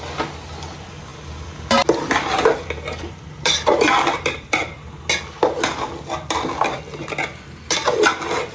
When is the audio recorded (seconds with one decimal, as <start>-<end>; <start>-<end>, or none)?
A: 0.0-8.5